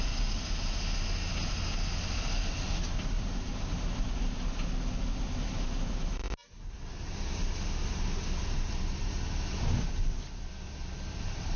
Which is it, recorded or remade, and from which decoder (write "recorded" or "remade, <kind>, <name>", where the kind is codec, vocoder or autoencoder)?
recorded